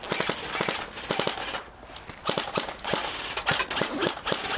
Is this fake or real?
real